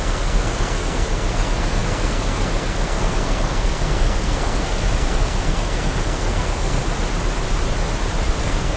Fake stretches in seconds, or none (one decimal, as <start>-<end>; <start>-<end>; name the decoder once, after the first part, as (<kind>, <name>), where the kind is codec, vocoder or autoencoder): 0.0-6.8 (codec, SNAC); 8.4-8.8